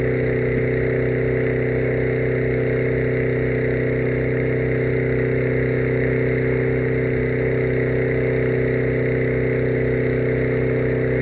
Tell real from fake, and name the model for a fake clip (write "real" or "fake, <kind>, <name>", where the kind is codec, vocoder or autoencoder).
real